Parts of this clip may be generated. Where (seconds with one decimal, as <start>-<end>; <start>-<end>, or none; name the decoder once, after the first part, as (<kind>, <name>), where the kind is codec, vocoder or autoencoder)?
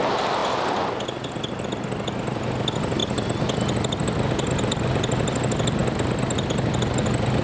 none